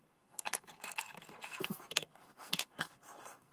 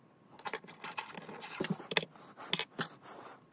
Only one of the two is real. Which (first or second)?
second